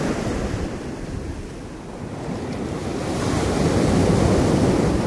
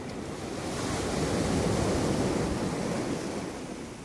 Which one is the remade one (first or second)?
first